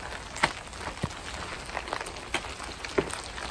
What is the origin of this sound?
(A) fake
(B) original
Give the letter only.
B